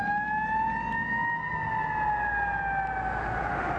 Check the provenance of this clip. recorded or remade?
recorded